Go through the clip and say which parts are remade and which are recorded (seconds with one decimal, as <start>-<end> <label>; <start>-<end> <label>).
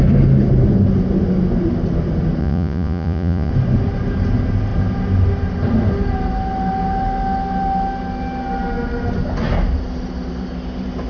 0.0-2.4 recorded; 2.4-3.5 remade; 3.5-11.1 recorded